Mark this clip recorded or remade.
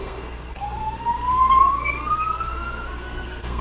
remade